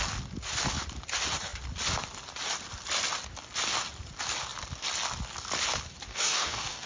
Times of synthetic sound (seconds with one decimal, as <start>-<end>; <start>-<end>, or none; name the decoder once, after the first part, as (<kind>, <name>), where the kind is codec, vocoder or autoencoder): 6.1-6.9 (codec, DAC)